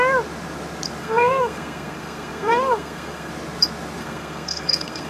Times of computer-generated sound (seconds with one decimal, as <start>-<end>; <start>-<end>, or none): 1.0-3.3; 4.0-5.1